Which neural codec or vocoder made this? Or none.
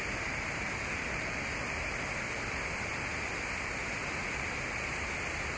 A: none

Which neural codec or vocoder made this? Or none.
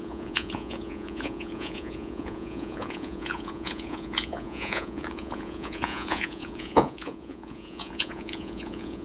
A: vocoder, Vocos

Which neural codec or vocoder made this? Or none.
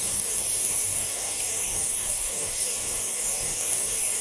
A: codec, DAC